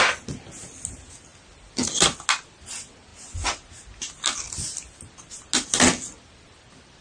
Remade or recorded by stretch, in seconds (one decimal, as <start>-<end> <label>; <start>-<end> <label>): 0.0-7.0 recorded